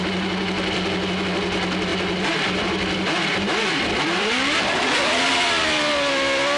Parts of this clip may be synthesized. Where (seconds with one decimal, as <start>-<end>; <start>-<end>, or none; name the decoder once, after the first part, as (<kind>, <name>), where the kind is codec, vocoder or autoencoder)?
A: 1.9-5.9 (vocoder, BigVGAN v2)